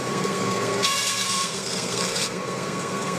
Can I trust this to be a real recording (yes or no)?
no